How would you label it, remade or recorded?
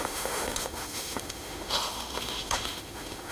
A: remade